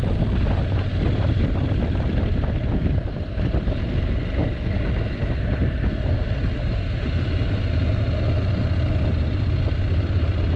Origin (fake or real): real